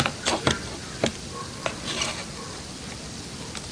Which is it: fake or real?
real